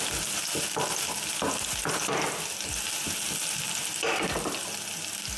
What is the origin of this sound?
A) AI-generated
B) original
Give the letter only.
B